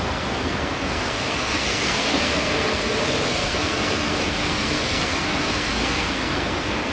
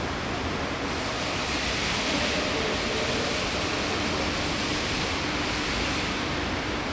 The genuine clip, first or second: second